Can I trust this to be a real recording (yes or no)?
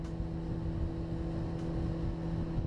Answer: yes